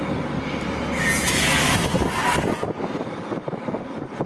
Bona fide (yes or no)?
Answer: yes